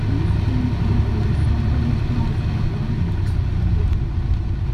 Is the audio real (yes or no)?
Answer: yes